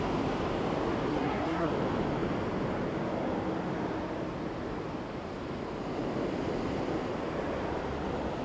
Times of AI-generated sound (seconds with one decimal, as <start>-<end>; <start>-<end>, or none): 1.1-1.7